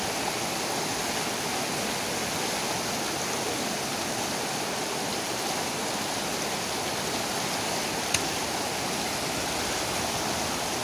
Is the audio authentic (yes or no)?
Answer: yes